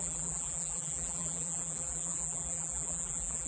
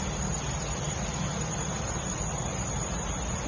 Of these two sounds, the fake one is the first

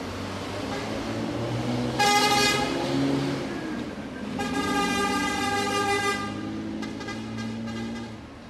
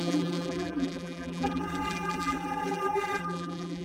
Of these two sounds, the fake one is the second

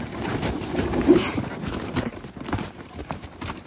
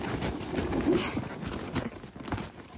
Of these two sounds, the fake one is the first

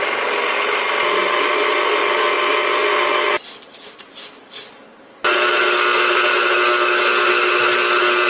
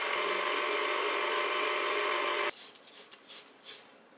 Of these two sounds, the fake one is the second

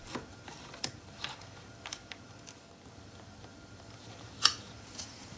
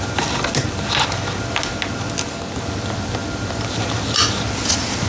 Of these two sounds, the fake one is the first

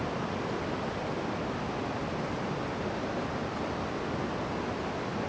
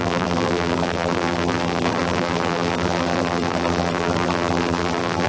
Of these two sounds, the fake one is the second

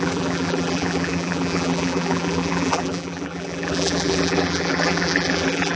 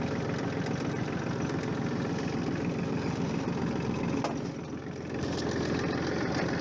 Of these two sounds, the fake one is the first